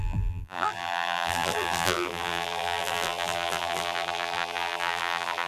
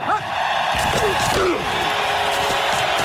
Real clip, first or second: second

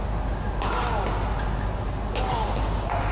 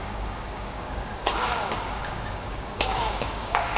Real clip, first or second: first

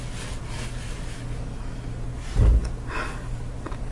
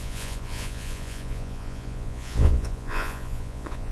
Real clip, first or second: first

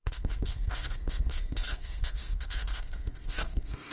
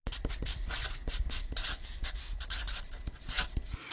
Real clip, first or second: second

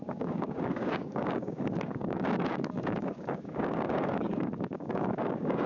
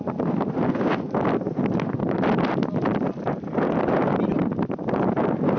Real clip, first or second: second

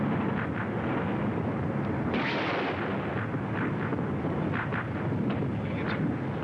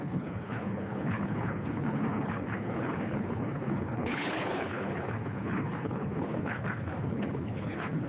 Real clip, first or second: first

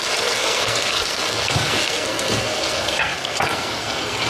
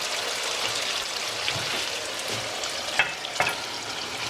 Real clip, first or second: second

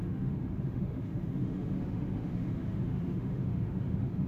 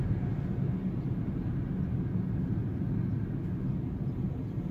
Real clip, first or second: second